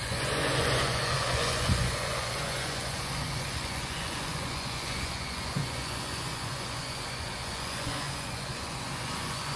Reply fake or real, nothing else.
fake